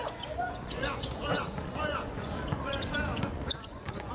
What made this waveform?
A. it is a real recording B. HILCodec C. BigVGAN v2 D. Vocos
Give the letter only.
D